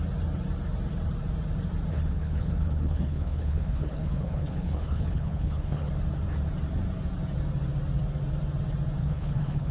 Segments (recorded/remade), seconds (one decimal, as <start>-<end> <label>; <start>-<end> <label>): 0.0-1.9 recorded; 1.9-5.9 remade; 5.9-9.0 recorded; 9.0-9.7 remade